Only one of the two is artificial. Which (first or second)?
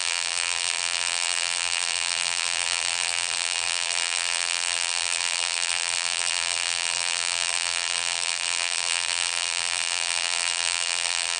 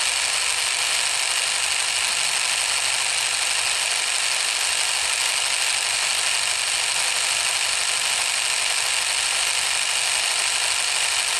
first